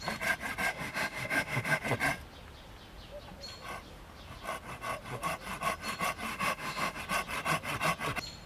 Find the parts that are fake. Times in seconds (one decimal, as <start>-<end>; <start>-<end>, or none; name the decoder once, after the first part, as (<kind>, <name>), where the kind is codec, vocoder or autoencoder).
0.7-1.8 (autoencoder, DAC-VAE); 6.3-7.0